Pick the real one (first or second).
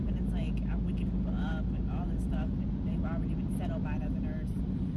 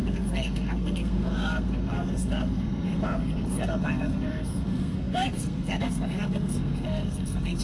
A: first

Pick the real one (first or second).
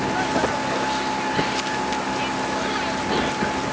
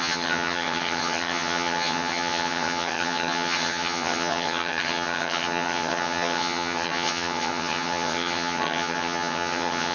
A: first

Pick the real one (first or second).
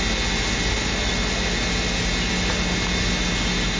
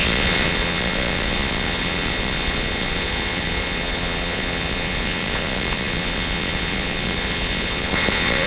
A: first